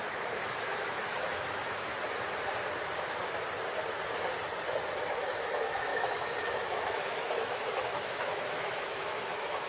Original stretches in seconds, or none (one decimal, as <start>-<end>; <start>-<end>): 1.9-5.1